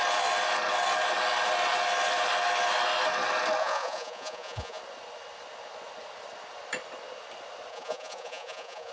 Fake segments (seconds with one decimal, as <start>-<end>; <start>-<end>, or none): 3.6-4.8; 7.7-8.9